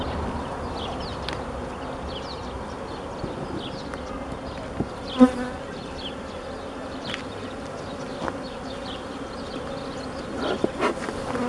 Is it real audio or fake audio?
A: real